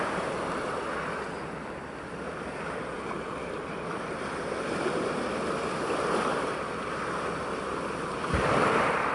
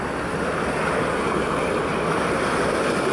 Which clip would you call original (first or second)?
second